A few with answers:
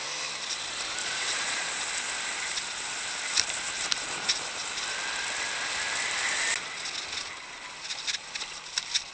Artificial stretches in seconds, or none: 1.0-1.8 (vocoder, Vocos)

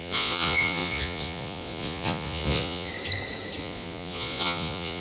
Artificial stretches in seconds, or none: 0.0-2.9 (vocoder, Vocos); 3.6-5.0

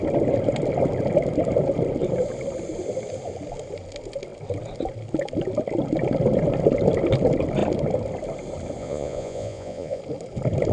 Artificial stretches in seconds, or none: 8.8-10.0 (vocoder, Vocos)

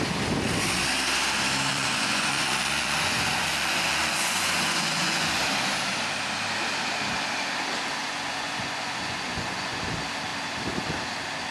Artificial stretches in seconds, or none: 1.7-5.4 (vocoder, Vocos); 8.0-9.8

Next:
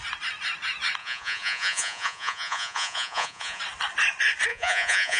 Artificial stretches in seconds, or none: 1.0-3.6 (vocoder, Vocos); 4.5-5.2

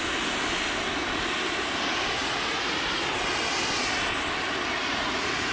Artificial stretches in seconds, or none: 2.2-3.0 (vocoder, Vocos); 4.8-5.5